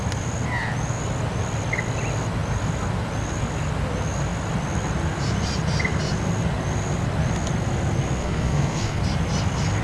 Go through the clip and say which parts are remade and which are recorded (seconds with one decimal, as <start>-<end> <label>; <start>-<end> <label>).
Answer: 0.0-8.2 recorded; 8.2-9.0 remade; 9.0-9.8 recorded